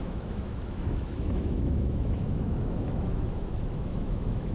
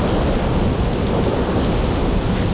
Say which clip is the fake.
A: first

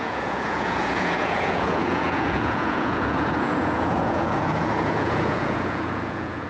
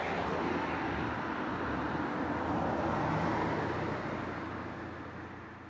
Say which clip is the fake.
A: first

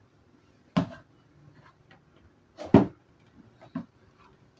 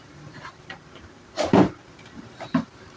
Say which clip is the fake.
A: second